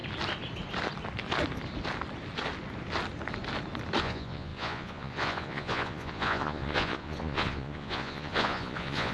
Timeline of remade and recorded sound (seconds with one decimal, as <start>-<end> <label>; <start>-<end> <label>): 0.0-4.0 recorded; 4.0-9.1 remade